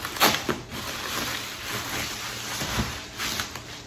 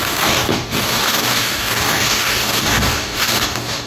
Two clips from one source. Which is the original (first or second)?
first